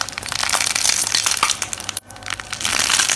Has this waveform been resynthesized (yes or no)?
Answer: no